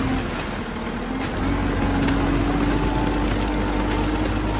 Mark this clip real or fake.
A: real